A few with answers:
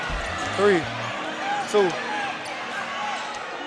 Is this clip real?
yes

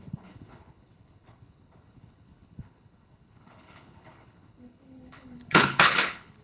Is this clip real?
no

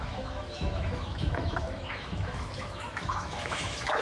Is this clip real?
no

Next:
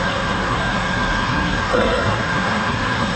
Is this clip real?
no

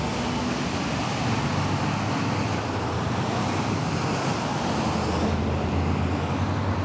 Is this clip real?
yes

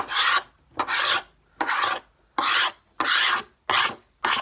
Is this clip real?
yes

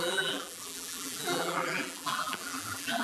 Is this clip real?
no